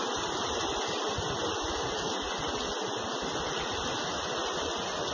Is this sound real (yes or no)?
yes